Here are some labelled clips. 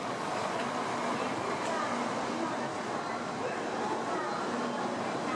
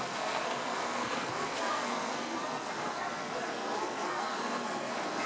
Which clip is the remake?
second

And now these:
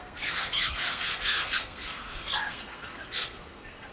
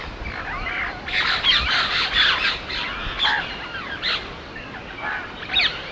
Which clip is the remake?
first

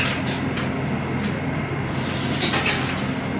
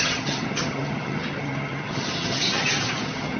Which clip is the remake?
second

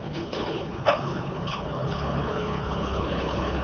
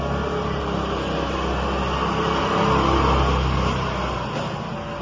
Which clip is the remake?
first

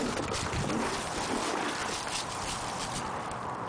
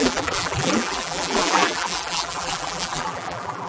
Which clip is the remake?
second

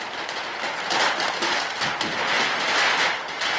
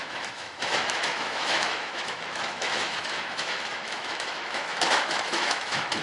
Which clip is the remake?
second